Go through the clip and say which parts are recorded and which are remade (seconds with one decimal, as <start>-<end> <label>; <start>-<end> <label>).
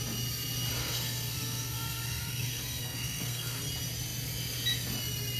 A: 0.0-0.8 recorded; 0.8-3.6 remade; 3.6-5.4 recorded